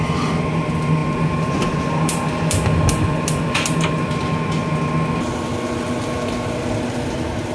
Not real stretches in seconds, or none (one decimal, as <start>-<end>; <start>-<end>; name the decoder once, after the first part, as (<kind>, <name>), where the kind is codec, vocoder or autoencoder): none